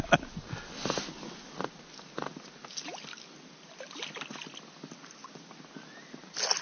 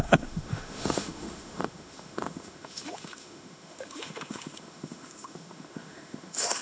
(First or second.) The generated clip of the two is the second